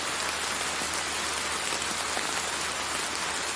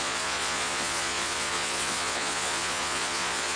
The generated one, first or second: second